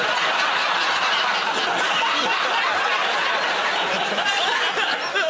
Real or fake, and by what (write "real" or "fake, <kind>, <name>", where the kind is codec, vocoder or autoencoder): real